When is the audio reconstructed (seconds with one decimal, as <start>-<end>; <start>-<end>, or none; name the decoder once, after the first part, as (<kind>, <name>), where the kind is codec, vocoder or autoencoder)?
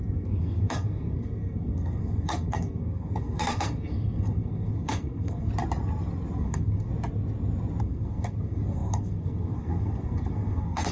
0.0-5.5 (codec, SNAC); 6.4-6.9; 7.8-10.9